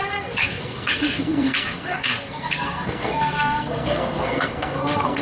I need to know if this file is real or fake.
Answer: fake